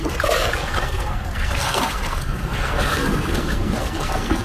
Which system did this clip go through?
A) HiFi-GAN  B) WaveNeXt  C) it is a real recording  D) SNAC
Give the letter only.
D